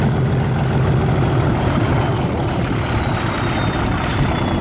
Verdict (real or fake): real